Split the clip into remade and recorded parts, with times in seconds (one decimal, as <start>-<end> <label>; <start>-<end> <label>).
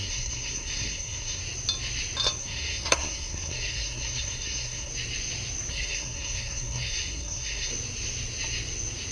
0.0-1.4 remade; 1.4-2.4 recorded; 2.4-4.9 remade; 4.9-5.7 recorded; 5.7-7.7 remade; 7.7-9.1 recorded